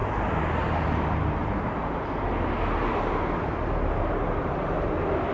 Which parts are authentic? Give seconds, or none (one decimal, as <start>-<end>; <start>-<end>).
0.0-5.3